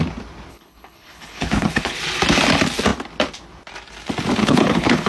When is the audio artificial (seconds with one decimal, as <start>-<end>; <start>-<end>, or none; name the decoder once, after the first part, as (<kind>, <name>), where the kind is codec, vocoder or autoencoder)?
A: 0.5-2.0 (codec, HILCodec); 4.4-5.1